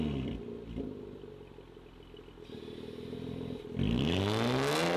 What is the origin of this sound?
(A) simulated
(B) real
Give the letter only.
B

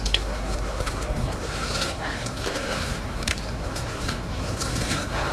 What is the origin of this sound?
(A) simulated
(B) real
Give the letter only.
A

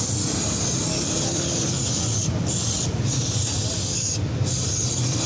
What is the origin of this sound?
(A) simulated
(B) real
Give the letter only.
B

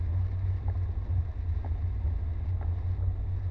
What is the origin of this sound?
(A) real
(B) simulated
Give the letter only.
A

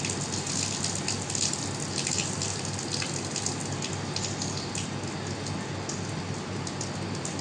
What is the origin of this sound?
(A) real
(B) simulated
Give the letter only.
A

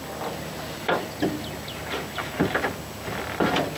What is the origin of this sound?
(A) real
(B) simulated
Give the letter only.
A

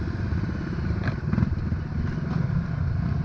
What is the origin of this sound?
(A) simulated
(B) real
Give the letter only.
B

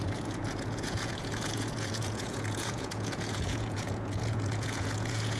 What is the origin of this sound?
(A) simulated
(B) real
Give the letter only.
A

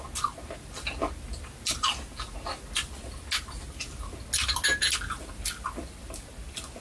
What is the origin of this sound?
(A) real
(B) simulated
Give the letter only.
A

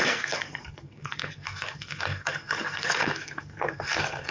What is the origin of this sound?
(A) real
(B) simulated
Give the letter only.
B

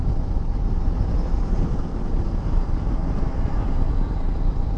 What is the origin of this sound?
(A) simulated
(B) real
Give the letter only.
A